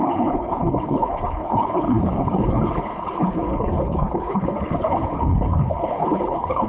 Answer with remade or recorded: remade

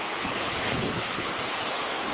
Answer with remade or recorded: remade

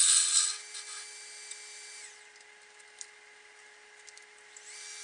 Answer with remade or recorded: recorded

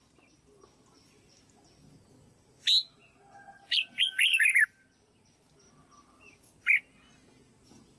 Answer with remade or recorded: recorded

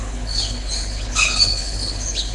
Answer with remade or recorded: remade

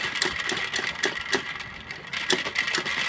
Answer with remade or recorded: recorded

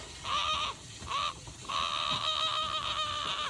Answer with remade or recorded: recorded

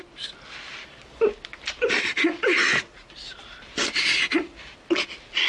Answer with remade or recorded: recorded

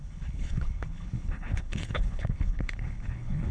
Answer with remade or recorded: remade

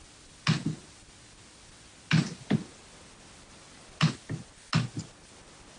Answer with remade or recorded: recorded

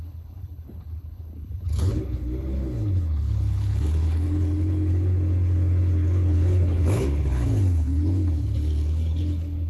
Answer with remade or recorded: remade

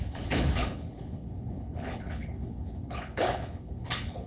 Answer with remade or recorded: remade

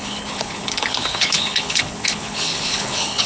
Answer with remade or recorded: remade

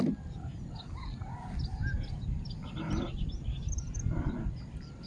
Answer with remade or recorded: recorded